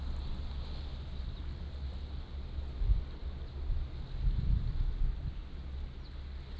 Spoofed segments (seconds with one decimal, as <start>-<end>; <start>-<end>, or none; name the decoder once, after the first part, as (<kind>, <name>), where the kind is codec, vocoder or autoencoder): none